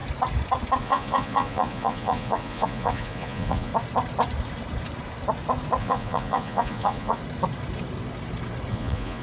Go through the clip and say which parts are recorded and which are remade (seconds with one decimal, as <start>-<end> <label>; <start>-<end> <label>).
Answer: 0.0-0.8 recorded; 0.8-3.7 remade; 3.7-5.8 recorded; 5.8-7.2 remade; 7.2-8.7 recorded; 8.7-9.2 remade